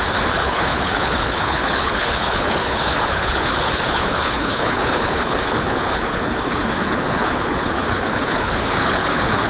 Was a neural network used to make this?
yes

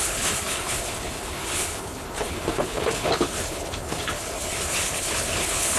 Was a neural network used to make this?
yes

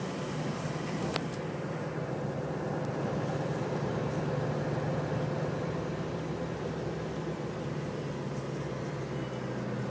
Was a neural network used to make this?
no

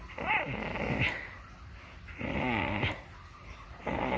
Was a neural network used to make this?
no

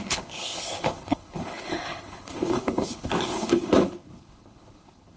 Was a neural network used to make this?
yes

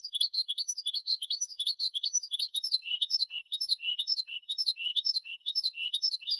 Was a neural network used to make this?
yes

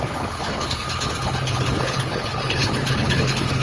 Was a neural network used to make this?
yes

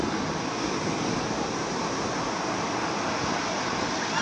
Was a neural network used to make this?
no